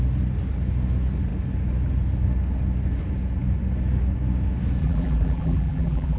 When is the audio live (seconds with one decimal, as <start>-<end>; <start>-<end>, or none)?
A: 0.0-4.8